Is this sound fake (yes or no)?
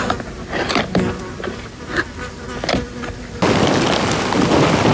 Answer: no